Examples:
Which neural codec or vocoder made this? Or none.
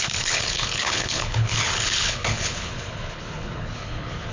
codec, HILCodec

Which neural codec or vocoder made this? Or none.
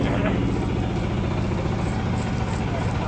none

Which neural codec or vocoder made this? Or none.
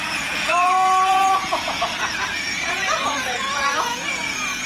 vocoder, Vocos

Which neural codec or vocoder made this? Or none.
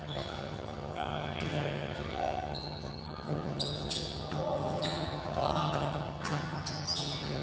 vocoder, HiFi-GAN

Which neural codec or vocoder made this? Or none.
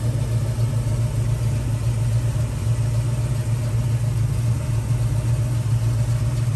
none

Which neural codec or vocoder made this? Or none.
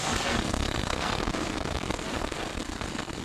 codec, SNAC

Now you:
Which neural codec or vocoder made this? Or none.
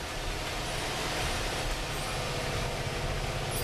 none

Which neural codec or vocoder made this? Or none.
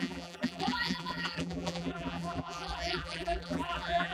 vocoder, BigVGAN v2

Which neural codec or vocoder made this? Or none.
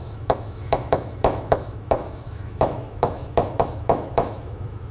autoencoder, DAC-VAE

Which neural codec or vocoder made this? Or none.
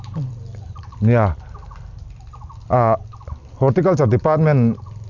none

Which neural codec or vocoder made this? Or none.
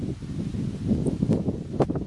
none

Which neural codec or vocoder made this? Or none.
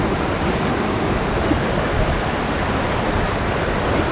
none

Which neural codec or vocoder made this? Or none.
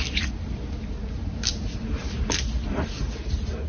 none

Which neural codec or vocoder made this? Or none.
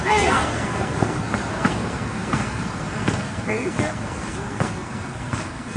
codec, SNAC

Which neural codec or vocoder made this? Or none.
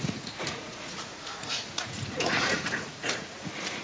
vocoder, Vocos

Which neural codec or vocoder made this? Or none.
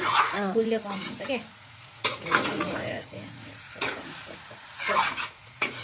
vocoder, Vocos